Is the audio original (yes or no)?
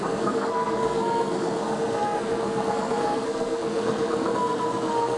no